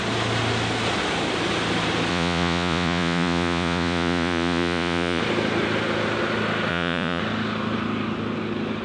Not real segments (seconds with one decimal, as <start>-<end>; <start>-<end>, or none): 2.1-5.2; 6.7-7.2